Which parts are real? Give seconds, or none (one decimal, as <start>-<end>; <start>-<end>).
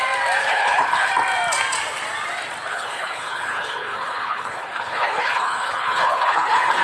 0.0-0.4; 1.1-2.7